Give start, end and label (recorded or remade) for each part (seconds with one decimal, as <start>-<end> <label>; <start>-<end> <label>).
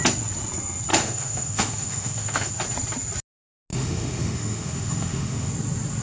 0.0-0.9 recorded; 0.9-2.5 remade; 2.5-3.7 recorded; 3.7-5.5 remade; 5.5-6.0 recorded